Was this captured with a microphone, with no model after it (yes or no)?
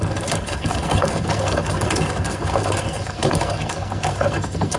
no